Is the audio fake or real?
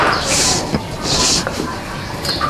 fake